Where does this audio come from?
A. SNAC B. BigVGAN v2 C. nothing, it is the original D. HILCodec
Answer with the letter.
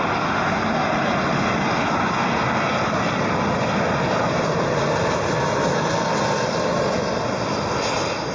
C